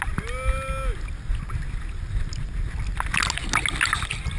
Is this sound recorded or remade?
recorded